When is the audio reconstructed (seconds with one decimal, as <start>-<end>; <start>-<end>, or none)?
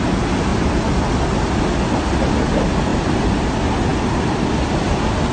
none